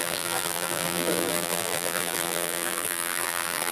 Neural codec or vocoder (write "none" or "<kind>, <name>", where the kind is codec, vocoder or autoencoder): vocoder, BigVGAN v2